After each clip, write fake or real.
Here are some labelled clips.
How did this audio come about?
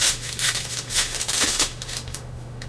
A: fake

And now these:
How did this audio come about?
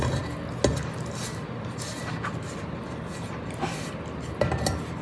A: real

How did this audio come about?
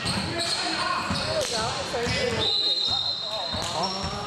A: real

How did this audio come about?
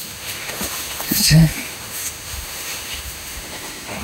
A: fake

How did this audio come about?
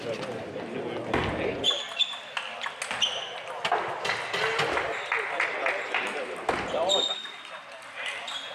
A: real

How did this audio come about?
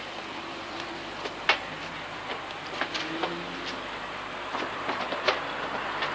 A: real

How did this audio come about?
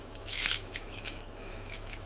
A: fake